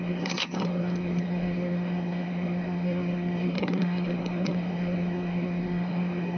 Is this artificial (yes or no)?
yes